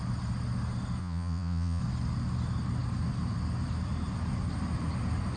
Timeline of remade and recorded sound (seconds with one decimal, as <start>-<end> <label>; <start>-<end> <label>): 0.0-1.0 recorded; 1.0-1.8 remade; 1.8-5.4 recorded